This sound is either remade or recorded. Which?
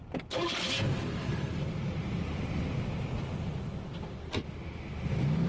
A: recorded